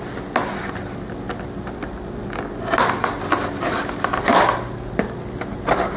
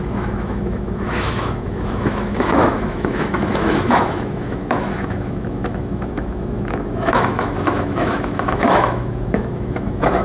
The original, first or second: first